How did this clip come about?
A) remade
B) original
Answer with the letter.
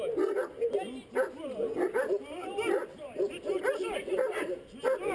B